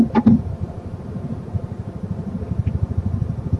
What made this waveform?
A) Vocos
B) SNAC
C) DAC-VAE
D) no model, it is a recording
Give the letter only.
D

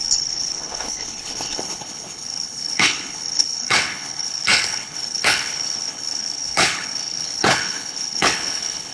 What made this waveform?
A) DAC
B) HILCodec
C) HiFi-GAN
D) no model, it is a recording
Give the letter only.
B